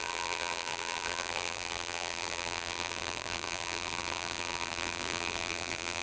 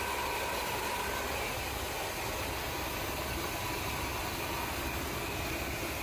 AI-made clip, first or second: first